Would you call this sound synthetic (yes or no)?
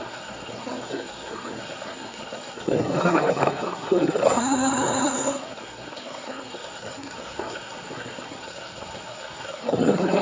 yes